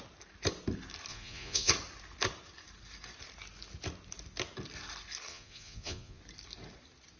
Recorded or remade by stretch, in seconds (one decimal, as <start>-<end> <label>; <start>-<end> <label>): 0.0-1.1 recorded; 1.1-1.7 remade; 1.7-5.3 recorded; 5.3-6.2 remade; 6.2-7.2 recorded